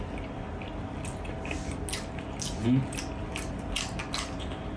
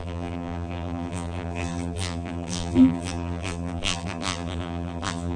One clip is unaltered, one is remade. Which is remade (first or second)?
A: second